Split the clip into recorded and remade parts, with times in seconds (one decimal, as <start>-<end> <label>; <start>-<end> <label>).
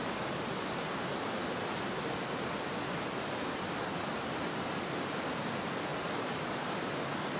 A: 0.0-5.9 recorded; 5.9-6.8 remade; 6.8-7.4 recorded